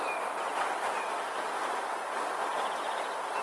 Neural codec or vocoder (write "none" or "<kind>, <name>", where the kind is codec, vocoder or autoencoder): none